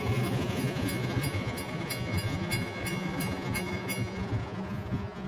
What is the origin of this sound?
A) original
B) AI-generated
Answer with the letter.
B